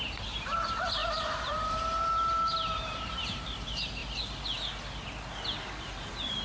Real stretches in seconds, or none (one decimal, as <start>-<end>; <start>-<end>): 4.0-5.8